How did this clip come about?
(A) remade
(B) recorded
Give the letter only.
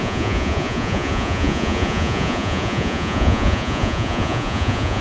A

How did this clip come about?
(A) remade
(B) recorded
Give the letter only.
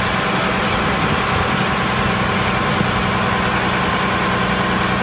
B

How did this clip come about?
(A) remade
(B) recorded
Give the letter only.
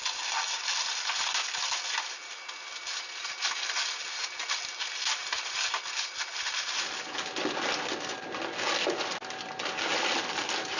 B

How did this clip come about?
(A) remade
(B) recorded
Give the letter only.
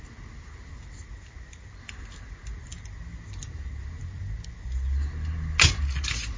B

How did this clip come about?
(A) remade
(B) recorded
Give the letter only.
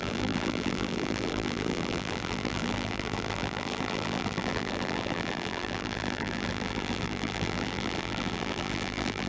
A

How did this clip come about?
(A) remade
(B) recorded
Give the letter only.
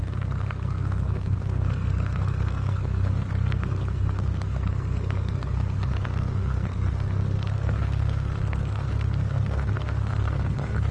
A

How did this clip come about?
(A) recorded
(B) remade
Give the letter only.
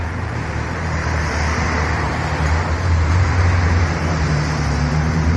B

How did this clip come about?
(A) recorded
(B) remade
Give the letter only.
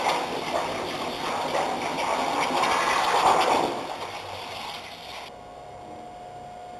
A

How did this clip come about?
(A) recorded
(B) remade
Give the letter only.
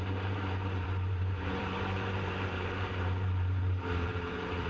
B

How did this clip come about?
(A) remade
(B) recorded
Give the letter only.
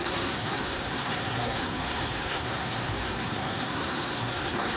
A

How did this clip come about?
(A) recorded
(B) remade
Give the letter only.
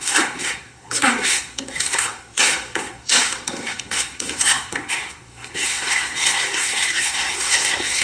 B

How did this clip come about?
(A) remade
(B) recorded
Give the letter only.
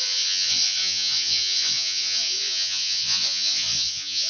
A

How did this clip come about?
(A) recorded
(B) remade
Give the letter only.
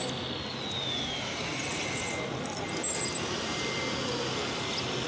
A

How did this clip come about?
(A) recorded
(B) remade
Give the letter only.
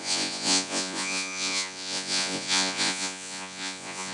B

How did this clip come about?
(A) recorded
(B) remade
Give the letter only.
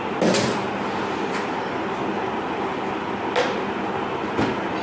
A